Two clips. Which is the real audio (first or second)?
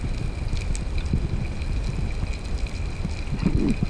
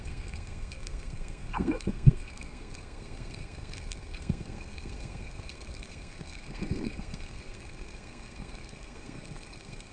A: first